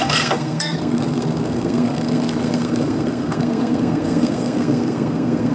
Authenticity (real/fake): fake